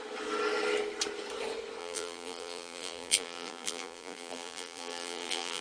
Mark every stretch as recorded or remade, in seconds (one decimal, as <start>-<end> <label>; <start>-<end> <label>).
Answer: 0.0-1.8 recorded; 1.8-5.6 remade

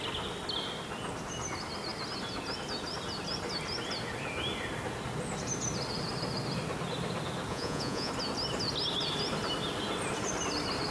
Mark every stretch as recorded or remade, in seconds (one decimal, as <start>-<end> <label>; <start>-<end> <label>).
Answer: 0.0-7.5 recorded; 7.5-8.1 remade; 8.1-10.9 recorded